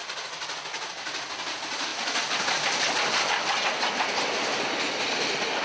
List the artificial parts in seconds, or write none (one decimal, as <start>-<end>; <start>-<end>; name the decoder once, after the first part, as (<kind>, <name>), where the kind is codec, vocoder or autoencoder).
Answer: none